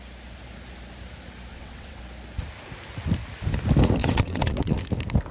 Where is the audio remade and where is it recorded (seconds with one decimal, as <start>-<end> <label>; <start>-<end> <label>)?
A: 0.0-1.5 recorded; 1.5-2.0 remade; 2.0-4.0 recorded; 4.0-4.8 remade; 4.8-5.3 recorded